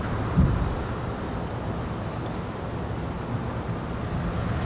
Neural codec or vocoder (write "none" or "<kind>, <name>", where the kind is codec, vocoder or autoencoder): none